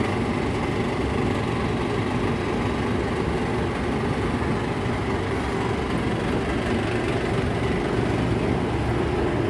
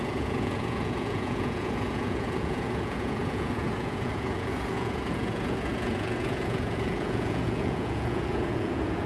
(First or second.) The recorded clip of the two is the first